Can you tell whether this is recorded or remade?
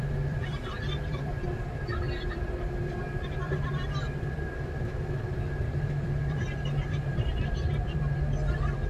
remade